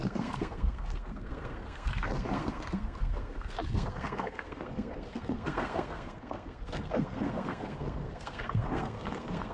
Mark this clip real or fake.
fake